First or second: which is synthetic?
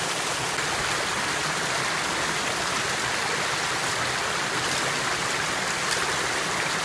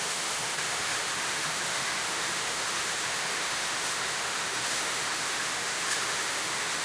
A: second